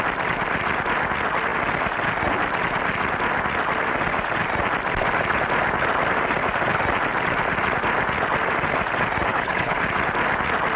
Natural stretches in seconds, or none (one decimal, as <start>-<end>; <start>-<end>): 0.0-9.3; 9.8-10.8